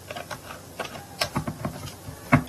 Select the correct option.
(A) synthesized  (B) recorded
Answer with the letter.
B